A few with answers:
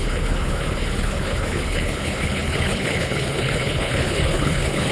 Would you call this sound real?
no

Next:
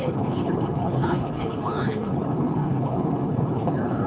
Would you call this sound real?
no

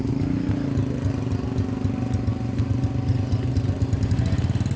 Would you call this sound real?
yes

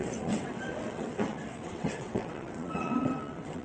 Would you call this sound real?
no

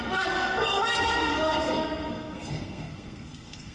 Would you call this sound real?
no